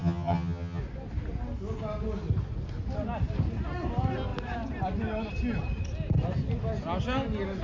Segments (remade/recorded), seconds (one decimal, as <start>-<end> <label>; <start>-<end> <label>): 0.0-0.8 remade; 0.8-7.6 recorded